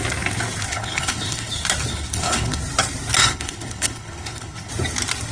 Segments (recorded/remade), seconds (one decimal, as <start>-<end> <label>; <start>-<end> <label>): 0.0-0.7 recorded; 0.7-1.5 remade; 1.5-1.9 recorded; 1.9-2.6 remade; 2.6-3.2 recorded; 3.2-4.7 remade; 4.7-5.3 recorded